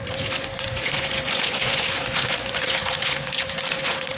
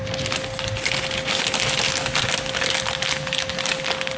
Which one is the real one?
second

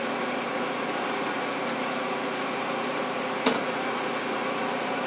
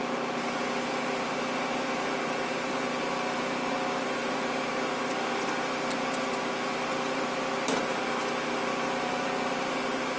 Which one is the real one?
second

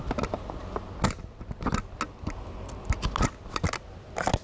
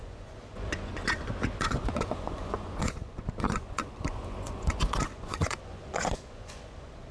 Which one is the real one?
first